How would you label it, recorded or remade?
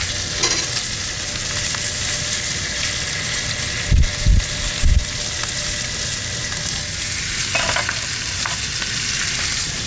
recorded